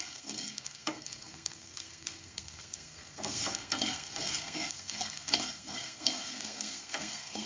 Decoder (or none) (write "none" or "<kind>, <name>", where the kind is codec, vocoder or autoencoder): codec, SNAC